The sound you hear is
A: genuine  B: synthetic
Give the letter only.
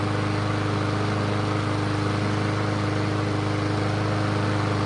A